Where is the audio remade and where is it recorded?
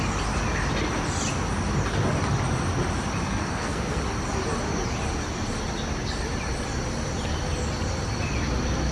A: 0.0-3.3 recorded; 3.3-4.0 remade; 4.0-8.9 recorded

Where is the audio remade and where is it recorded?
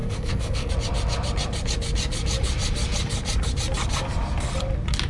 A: 0.0-0.7 remade; 0.7-5.1 recorded